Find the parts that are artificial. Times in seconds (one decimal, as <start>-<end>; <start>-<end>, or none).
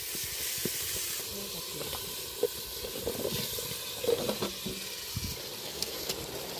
5.6-6.1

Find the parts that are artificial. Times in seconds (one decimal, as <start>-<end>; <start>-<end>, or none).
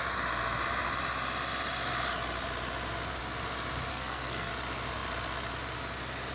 3.9-4.5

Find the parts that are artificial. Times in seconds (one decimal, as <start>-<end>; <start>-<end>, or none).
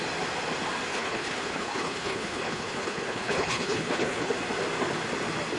0.9-4.3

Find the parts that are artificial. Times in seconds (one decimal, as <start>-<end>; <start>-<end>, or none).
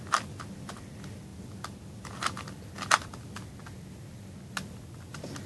none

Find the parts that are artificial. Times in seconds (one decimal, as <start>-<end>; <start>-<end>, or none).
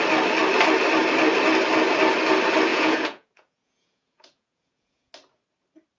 2.7-5.1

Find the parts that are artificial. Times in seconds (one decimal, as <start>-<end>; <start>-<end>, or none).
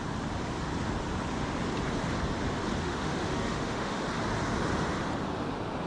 2.8-4.0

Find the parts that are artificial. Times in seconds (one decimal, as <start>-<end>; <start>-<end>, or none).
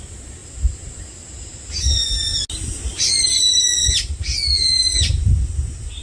none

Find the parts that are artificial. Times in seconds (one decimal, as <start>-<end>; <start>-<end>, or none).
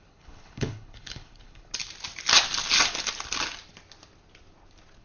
0.0-1.7